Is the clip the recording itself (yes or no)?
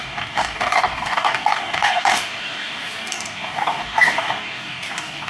no